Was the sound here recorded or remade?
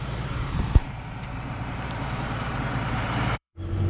remade